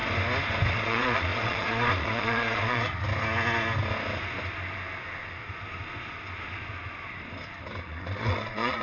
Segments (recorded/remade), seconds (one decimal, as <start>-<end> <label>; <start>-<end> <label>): 0.0-0.7 recorded; 0.7-3.0 remade; 3.0-7.8 recorded; 7.8-8.8 remade